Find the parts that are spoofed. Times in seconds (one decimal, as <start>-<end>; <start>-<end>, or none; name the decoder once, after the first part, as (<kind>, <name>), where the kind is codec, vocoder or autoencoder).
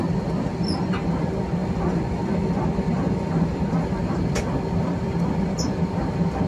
1.6-5.5 (vocoder, BigVGAN v2)